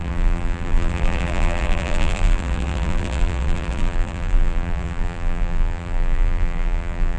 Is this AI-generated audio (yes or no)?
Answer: yes